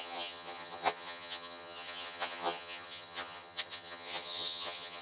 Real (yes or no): no